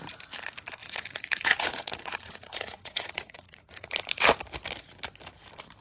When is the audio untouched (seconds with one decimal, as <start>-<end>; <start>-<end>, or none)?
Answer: 0.0-0.8; 3.9-5.8